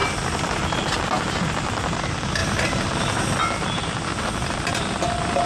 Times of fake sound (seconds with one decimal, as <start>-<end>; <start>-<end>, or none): none